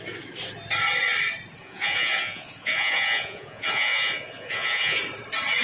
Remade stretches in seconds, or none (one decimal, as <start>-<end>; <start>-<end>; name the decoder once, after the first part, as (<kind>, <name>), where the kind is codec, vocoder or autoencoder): 1.6-5.0 (vocoder, Vocos)